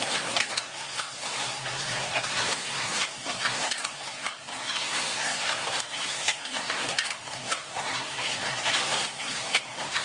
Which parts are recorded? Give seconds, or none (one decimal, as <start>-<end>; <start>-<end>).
none